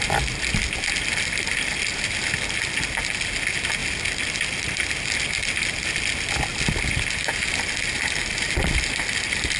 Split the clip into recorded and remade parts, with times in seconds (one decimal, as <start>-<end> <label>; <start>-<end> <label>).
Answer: 0.0-9.6 recorded